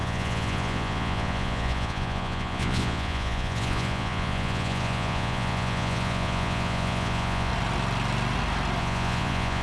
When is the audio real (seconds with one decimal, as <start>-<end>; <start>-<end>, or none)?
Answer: 7.5-8.8